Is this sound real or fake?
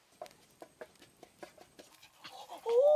real